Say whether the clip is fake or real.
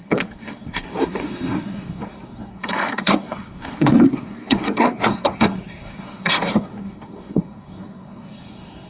fake